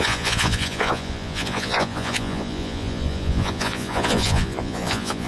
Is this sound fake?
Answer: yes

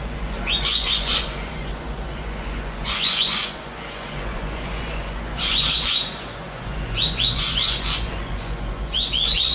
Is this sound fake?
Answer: yes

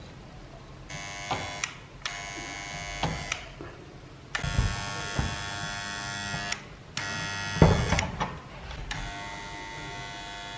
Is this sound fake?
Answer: no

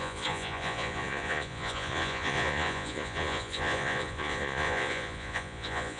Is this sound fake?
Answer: yes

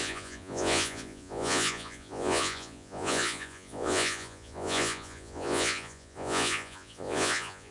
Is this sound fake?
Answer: yes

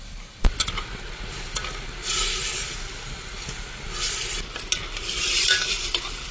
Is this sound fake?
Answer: no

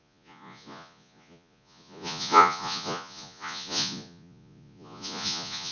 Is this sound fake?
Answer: yes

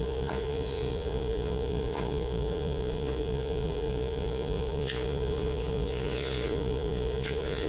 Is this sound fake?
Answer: yes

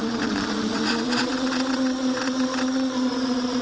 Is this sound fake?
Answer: yes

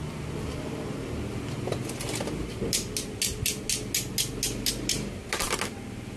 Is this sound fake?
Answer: no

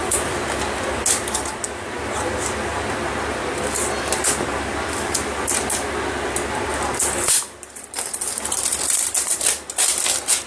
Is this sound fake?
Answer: no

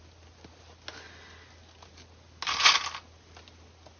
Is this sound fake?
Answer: no